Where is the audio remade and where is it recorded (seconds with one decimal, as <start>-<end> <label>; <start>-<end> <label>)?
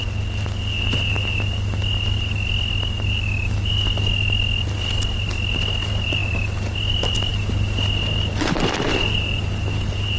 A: 0.0-10.2 recorded